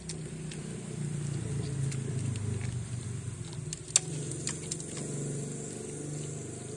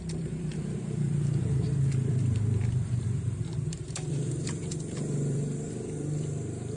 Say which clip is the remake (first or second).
second